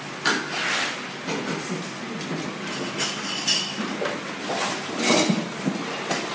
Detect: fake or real real